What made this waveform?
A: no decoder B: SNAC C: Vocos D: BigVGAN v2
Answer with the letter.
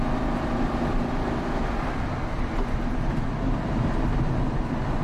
A